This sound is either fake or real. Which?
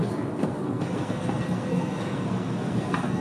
fake